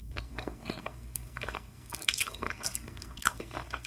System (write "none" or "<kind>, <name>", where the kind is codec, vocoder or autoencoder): codec, SNAC